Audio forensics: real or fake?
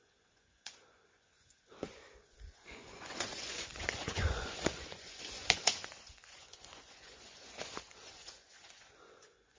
fake